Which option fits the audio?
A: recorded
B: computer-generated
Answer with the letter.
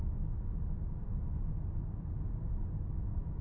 A